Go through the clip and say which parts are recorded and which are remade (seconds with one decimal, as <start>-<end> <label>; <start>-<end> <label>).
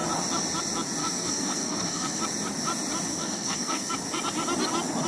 0.0-1.0 recorded; 1.0-2.2 remade; 2.2-3.1 recorded; 3.1-3.9 remade; 3.9-5.1 recorded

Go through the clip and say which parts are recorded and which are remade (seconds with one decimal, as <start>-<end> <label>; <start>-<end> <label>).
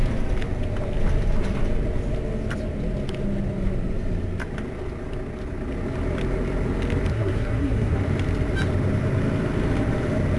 0.0-7.1 recorded; 7.1-8.0 remade; 8.0-10.4 recorded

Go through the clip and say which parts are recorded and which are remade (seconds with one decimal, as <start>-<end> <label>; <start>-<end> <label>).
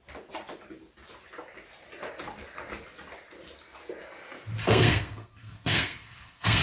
0.0-4.6 recorded; 4.6-6.6 remade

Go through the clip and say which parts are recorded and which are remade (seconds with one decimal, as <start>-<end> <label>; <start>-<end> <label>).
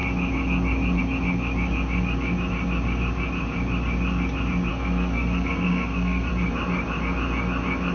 0.0-4.7 recorded; 4.7-6.3 remade; 6.3-7.9 recorded